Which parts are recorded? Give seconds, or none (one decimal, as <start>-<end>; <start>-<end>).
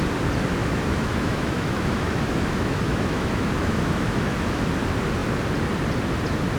0.0-0.6; 4.6-6.6